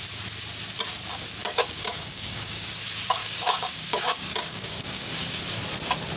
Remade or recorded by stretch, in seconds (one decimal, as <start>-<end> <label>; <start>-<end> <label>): 0.0-1.4 recorded; 1.4-2.8 remade; 2.8-3.2 recorded; 3.2-5.4 remade; 5.4-6.2 recorded

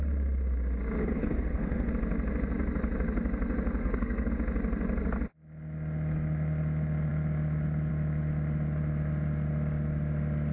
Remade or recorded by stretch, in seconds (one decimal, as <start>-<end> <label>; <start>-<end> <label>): 0.0-1.0 recorded; 1.0-1.9 remade; 1.9-3.8 recorded; 3.8-4.3 remade; 4.3-10.5 recorded

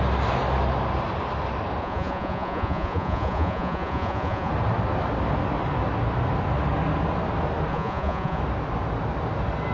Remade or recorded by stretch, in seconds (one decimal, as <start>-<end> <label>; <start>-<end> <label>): 0.0-1.8 recorded; 1.8-4.5 remade; 4.5-7.7 recorded; 7.7-8.4 remade; 8.4-9.7 recorded